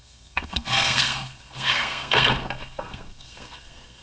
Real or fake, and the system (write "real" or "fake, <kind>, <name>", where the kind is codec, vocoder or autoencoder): fake, codec, SNAC